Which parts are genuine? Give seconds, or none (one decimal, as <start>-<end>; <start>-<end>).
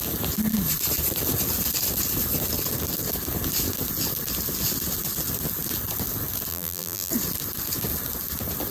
0.0-6.5; 7.1-8.7